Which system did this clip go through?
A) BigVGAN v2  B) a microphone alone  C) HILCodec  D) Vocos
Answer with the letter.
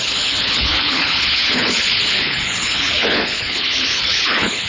C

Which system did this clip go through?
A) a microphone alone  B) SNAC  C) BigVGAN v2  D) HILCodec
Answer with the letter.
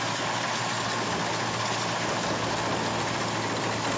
A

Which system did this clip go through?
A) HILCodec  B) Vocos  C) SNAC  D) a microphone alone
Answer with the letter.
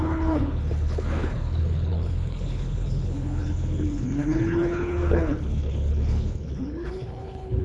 A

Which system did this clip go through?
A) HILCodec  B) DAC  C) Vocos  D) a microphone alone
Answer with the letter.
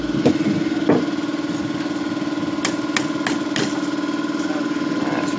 D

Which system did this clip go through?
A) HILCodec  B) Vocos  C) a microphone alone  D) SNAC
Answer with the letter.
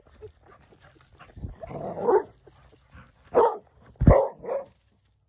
C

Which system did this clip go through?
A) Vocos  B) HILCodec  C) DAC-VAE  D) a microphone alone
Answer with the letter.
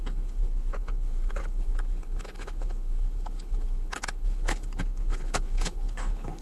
B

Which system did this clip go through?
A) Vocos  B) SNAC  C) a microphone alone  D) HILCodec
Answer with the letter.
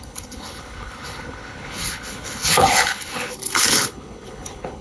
D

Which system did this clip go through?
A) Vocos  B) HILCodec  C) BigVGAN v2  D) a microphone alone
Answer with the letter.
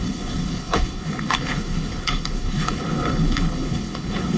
B